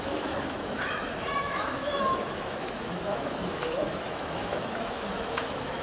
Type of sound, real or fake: fake